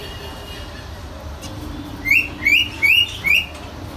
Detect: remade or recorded recorded